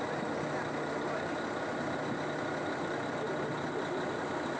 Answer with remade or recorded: recorded